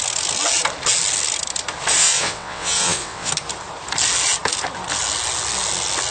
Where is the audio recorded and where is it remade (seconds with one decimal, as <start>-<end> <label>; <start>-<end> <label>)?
0.0-2.0 recorded; 2.0-3.3 remade; 3.3-6.1 recorded